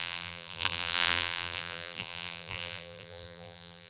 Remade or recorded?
remade